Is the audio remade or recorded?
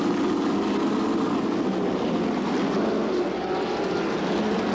recorded